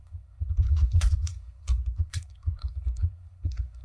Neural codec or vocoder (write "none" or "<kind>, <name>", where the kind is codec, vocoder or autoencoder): codec, SNAC